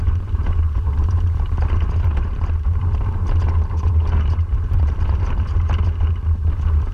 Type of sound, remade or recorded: remade